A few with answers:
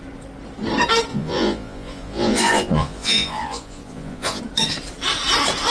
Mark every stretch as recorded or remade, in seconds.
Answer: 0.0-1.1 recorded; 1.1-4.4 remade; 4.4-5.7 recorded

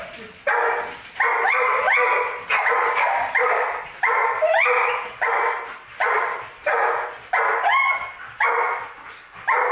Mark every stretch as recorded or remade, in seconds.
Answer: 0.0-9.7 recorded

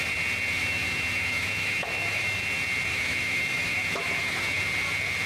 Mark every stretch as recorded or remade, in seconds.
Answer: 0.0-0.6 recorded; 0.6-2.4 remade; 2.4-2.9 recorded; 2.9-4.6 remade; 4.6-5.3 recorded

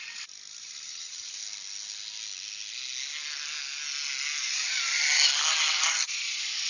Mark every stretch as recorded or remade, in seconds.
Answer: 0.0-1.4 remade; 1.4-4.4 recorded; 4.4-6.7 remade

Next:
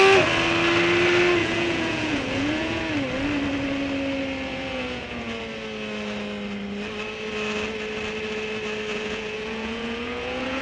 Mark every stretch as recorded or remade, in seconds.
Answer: 0.0-1.4 recorded; 1.4-2.8 remade; 2.8-4.5 recorded; 4.5-5.4 remade; 5.4-8.9 recorded; 8.9-10.6 remade

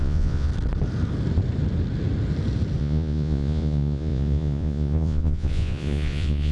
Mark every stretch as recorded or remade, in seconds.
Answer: 0.0-0.5 remade; 0.5-2.8 recorded; 2.8-6.5 remade

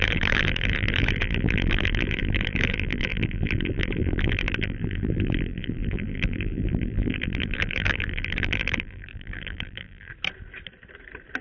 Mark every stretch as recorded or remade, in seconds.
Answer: 0.0-10.1 remade; 10.1-11.4 recorded